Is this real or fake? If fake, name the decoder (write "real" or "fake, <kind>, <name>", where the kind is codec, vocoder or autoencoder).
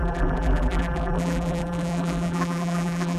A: fake, vocoder, BigVGAN v2